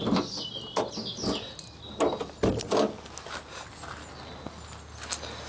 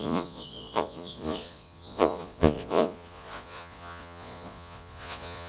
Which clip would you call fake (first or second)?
second